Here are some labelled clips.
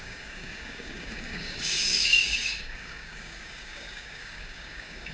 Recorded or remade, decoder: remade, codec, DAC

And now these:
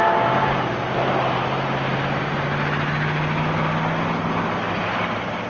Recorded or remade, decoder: recorded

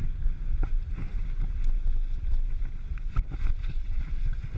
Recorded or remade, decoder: recorded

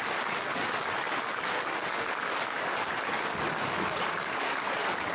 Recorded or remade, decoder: remade, codec, DAC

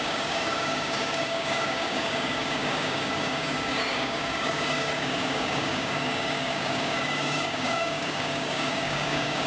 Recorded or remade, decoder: remade, codec, DAC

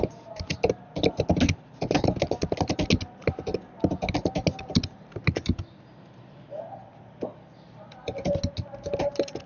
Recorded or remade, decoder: recorded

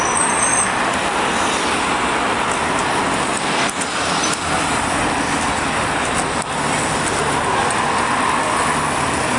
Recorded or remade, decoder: recorded